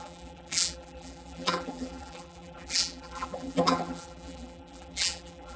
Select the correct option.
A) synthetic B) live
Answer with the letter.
A